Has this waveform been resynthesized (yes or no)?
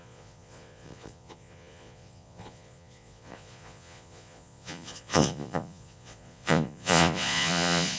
yes